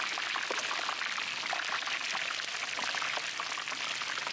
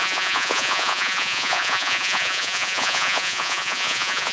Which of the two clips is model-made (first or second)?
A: second